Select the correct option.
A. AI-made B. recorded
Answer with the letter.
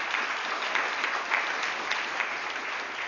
B